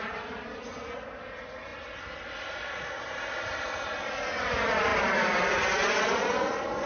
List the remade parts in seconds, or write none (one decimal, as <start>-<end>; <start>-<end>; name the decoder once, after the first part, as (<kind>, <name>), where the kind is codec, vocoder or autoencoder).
none